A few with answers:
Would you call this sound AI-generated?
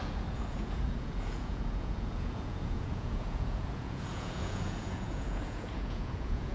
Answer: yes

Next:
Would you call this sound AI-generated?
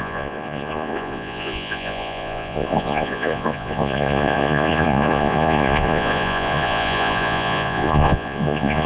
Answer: yes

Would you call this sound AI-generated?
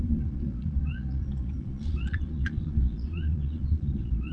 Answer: yes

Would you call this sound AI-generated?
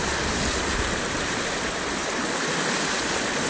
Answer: no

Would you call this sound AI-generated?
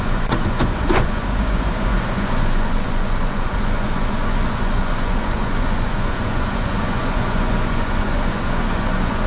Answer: yes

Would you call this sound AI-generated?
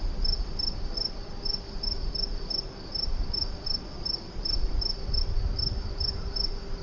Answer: no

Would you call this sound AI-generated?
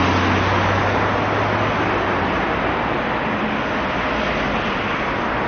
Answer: no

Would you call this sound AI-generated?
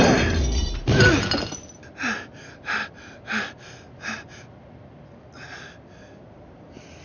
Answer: no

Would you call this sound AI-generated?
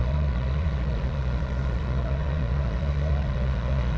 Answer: yes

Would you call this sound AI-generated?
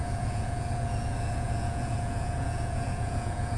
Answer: yes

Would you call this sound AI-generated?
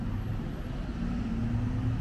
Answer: no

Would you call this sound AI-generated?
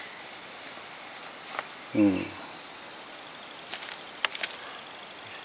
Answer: no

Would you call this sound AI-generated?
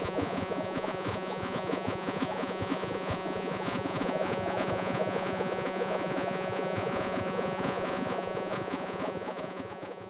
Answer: yes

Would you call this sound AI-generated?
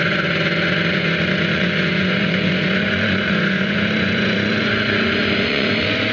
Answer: yes